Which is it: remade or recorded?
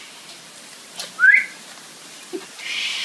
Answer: recorded